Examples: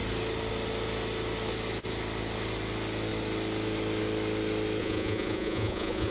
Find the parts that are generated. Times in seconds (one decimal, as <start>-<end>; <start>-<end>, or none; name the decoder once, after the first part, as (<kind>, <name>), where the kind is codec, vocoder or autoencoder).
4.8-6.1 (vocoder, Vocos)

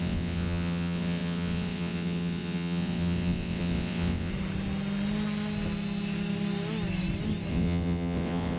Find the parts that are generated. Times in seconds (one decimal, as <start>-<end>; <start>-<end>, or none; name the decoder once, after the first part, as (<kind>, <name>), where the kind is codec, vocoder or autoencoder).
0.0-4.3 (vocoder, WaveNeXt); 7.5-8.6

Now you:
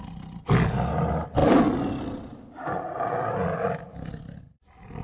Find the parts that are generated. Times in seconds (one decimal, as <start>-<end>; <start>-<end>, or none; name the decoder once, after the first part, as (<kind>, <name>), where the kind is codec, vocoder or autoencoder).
none

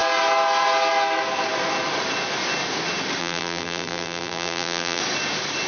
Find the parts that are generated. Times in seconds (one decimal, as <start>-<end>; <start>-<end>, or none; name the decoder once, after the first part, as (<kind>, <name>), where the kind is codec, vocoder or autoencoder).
3.2-5.0 (vocoder, BigVGAN v2)

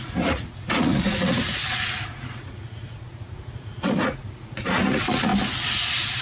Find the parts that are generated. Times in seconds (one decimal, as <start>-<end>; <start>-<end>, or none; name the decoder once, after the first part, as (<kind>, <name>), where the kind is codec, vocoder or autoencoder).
0.0-5.3 (vocoder, Vocos)